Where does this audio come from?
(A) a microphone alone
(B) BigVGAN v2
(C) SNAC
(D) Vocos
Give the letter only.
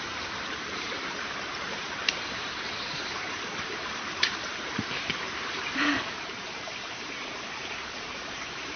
B